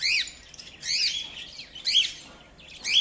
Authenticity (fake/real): real